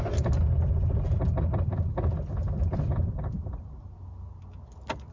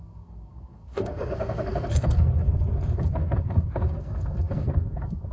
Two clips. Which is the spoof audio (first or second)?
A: second